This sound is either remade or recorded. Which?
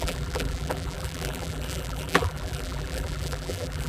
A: remade